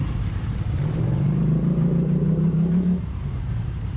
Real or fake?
fake